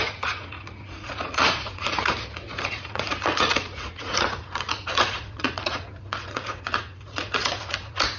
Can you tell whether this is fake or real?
fake